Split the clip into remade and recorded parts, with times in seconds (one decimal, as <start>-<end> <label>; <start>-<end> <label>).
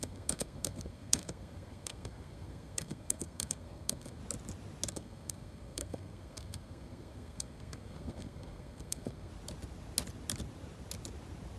0.0-4.2 remade; 4.2-4.9 recorded; 4.9-9.3 remade; 9.3-11.6 recorded